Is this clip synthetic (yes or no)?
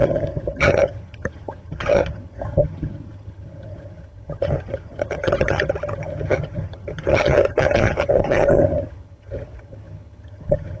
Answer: yes